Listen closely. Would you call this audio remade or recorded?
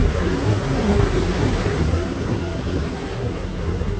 remade